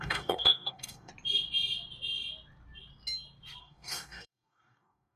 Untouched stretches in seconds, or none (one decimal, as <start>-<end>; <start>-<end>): 1.1-3.6